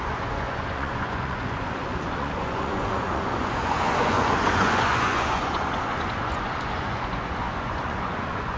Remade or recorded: remade